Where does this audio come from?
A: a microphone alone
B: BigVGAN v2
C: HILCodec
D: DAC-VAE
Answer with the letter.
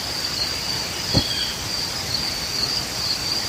B